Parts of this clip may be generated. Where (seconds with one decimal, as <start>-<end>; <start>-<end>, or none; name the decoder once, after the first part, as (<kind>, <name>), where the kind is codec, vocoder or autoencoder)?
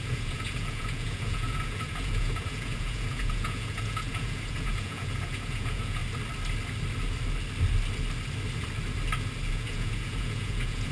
0.0-6.0 (vocoder, Vocos); 9.5-10.9